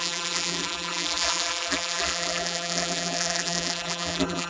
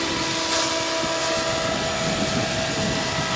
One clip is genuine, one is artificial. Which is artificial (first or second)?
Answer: first